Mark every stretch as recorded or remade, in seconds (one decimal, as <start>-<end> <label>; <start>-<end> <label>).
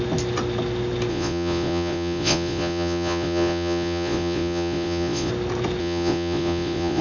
0.0-1.1 recorded; 1.1-5.3 remade; 5.3-5.8 recorded; 5.8-7.0 remade